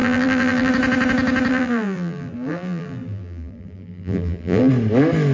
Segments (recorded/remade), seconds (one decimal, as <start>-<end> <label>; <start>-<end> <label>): 0.0-0.7 remade; 0.7-1.5 recorded; 1.5-4.7 remade; 4.7-5.3 recorded